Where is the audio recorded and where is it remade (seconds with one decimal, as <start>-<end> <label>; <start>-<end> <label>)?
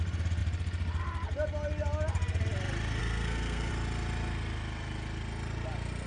0.0-3.0 recorded; 3.0-3.7 remade; 3.7-6.1 recorded